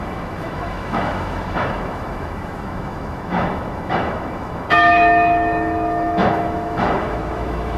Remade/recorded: remade